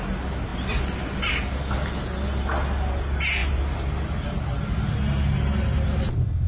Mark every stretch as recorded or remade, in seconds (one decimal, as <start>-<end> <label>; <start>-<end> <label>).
0.0-6.5 recorded